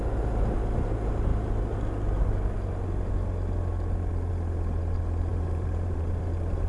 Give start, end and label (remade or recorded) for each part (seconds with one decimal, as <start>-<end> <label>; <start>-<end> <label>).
0.0-5.3 recorded; 5.3-6.2 remade; 6.2-6.7 recorded

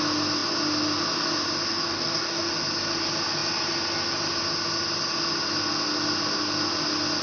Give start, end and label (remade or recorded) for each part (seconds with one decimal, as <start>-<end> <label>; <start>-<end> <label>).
0.0-1.7 recorded; 1.7-2.5 remade; 2.5-7.2 recorded

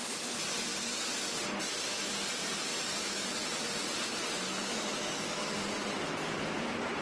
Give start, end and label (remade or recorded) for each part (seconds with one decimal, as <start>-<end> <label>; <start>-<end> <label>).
0.0-4.5 recorded; 4.5-5.5 remade; 5.5-7.0 recorded